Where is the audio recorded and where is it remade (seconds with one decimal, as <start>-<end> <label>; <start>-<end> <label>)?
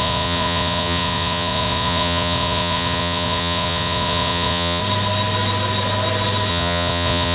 0.0-4.8 remade; 4.8-6.5 recorded; 6.5-7.3 remade